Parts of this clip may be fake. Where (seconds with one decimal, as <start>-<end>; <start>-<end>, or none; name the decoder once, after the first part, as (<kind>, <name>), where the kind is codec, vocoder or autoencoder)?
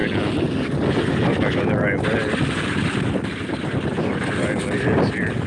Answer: none